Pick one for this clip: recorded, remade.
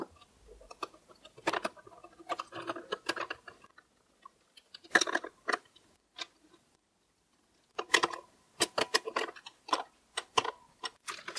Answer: recorded